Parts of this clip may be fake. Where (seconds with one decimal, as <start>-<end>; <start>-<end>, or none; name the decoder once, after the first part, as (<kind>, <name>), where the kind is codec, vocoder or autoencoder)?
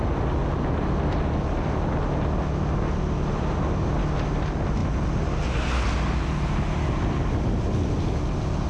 none